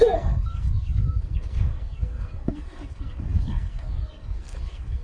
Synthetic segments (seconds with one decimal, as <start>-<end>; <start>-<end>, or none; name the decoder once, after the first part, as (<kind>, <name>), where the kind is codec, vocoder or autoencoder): 0.0-5.0 (codec, SNAC)